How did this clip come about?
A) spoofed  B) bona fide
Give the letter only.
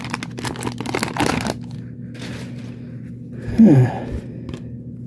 B